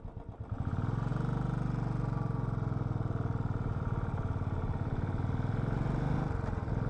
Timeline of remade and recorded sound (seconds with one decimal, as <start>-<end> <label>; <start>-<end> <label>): 0.0-6.9 recorded